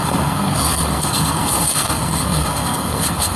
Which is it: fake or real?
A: fake